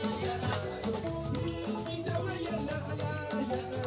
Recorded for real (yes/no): yes